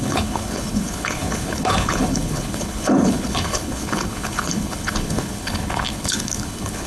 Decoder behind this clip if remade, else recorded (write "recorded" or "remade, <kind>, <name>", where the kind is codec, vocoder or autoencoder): remade, codec, HILCodec